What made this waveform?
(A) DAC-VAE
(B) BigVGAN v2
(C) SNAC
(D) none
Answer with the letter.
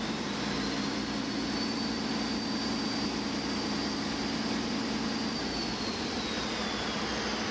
D